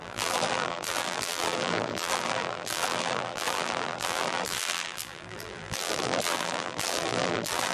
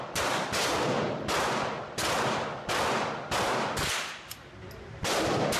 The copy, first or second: first